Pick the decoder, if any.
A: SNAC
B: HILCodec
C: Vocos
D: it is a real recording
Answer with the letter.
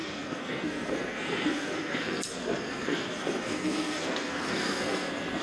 A